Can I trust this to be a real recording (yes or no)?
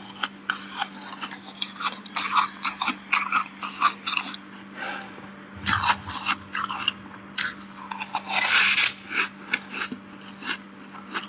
yes